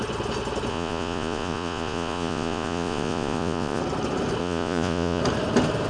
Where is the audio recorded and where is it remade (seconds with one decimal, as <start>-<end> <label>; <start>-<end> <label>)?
0.0-0.7 recorded; 0.7-3.8 remade; 3.8-4.4 recorded; 4.4-5.2 remade; 5.2-5.9 recorded